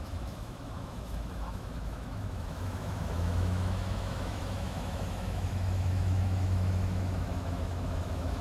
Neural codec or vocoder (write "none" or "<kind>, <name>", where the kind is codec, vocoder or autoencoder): autoencoder, DAC-VAE